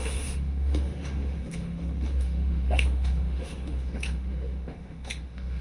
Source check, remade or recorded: remade